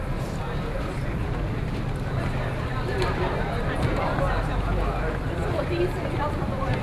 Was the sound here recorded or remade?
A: recorded